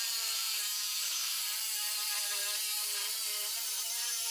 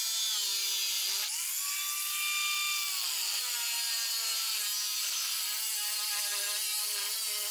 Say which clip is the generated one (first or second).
first